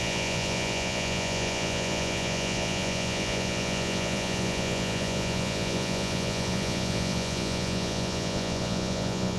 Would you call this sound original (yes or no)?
no